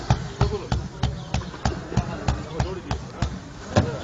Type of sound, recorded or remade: recorded